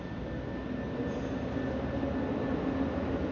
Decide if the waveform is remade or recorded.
recorded